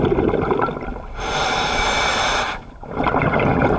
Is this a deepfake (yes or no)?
no